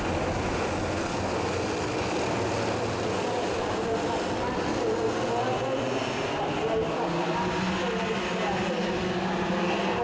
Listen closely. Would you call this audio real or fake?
real